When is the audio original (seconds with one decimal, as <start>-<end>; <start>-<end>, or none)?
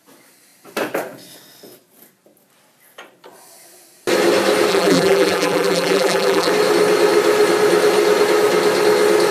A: 0.0-4.7; 6.5-9.3